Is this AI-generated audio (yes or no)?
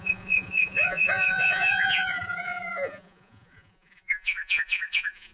yes